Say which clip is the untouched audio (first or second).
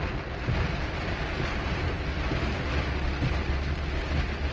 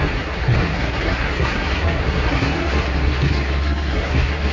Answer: first